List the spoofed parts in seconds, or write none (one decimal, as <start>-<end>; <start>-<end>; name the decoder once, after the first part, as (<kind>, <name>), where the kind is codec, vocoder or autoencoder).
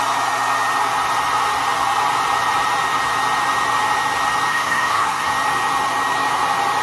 4.5-5.3 (codec, SNAC)